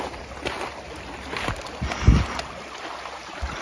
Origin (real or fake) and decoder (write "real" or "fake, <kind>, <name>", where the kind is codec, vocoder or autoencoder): real